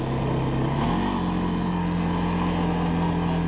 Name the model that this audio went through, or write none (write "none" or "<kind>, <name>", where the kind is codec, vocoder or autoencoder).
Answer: none